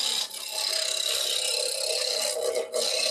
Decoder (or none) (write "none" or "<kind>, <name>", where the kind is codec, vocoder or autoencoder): none